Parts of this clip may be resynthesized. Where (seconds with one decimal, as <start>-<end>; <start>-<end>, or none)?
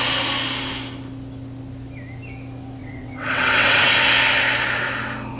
2.8-3.9